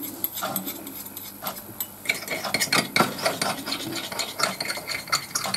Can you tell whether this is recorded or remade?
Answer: recorded